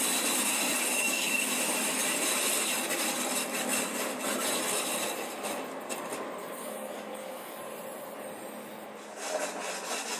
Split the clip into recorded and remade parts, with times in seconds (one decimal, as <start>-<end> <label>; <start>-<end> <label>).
0.0-0.9 recorded; 0.9-1.5 remade; 1.5-6.4 recorded; 6.4-7.6 remade; 7.6-10.2 recorded